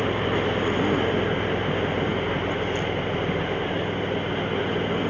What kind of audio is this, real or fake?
real